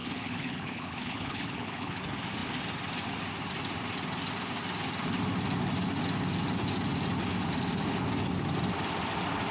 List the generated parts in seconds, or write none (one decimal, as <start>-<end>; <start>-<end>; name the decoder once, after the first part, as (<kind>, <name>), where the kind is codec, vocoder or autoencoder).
0.0-2.0 (codec, HILCodec)